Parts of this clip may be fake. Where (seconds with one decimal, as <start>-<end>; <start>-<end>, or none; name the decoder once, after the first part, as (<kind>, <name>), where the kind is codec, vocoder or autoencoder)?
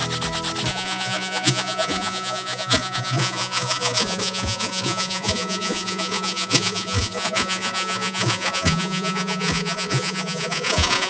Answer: 0.7-11.1 (vocoder, Vocos)